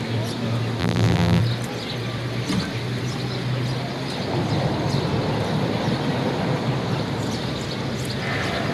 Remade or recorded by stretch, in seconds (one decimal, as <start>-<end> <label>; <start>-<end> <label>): 0.0-0.8 recorded; 0.8-1.4 remade; 1.4-8.7 recorded